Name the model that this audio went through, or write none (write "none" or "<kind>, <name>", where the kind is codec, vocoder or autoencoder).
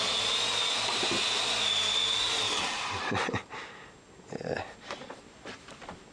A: none